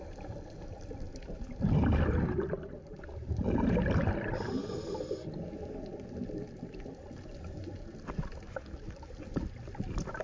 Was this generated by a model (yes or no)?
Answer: no